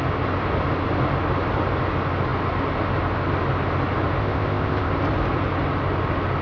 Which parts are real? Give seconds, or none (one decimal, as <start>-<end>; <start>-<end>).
0.0-4.2; 4.9-6.4